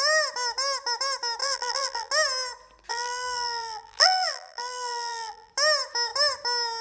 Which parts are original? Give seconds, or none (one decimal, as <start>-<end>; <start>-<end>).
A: 0.0-1.4; 2.1-2.9; 5.5-6.8